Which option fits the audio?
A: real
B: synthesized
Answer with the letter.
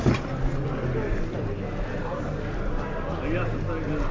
A